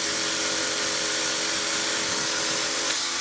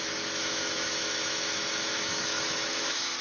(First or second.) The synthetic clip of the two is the second